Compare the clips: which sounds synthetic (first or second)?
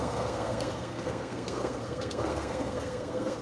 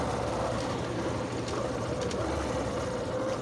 first